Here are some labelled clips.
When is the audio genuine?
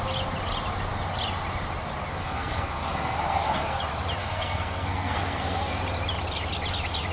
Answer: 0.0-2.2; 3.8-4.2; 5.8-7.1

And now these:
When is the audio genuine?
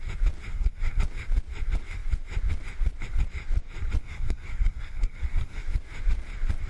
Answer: 0.0-0.5; 1.0-4.0; 5.6-6.7